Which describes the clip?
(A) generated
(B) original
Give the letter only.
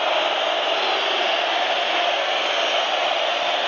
B